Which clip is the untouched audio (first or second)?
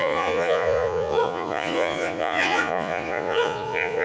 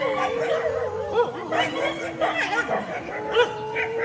second